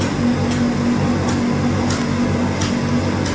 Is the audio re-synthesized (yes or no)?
no